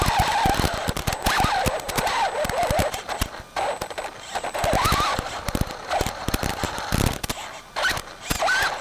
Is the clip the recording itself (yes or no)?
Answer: yes